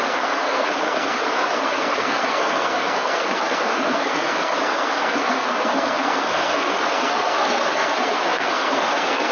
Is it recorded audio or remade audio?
remade